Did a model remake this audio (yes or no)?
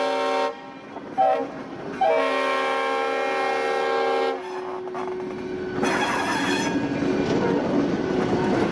no